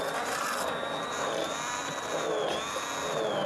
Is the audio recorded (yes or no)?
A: yes